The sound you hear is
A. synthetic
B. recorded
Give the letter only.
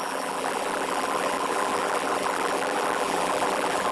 A